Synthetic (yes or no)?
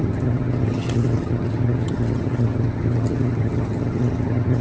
yes